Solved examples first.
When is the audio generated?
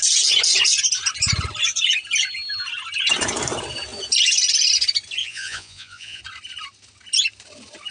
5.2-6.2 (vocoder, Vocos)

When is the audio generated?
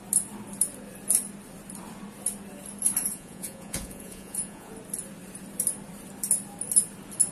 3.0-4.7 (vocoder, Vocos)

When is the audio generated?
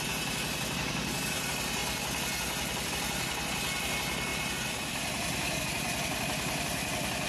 none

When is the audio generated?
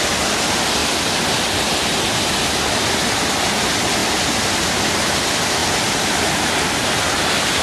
none